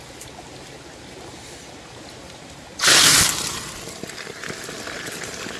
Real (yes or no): yes